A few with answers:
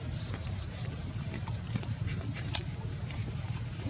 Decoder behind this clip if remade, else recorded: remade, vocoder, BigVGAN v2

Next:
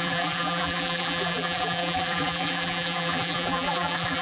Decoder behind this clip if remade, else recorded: remade, vocoder, BigVGAN v2